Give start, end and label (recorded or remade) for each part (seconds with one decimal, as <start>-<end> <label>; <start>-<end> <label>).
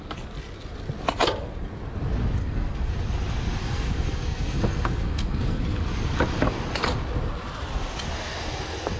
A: 0.0-2.4 recorded; 2.4-2.9 remade; 2.9-3.6 recorded; 3.6-5.6 remade; 5.6-9.0 recorded